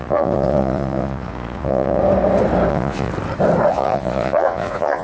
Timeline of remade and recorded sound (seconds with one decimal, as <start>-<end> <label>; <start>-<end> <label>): 0.0-2.0 remade; 2.0-2.7 recorded; 2.7-3.1 remade; 3.1-3.7 recorded; 3.7-5.0 remade